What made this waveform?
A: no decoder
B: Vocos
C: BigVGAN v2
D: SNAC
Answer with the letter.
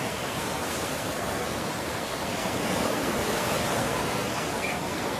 D